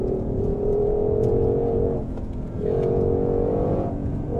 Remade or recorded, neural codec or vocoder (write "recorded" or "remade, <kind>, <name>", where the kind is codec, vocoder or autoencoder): remade, vocoder, Vocos